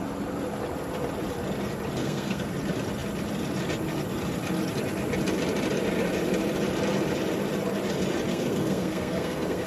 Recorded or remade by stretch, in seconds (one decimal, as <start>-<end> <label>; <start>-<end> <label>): 0.0-2.0 recorded; 2.0-2.5 remade; 2.5-8.3 recorded; 8.3-9.7 remade